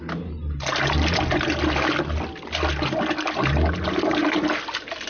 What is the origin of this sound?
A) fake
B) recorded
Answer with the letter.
B